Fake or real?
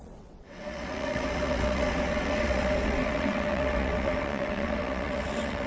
fake